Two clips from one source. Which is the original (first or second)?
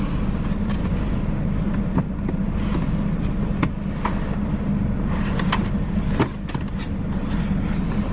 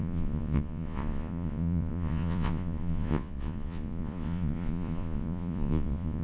first